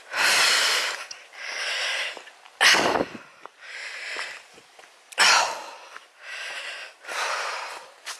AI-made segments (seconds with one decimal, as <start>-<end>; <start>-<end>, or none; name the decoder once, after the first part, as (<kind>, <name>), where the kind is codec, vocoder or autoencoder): none